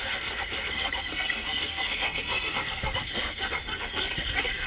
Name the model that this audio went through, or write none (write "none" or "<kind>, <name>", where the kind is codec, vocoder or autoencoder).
codec, SNAC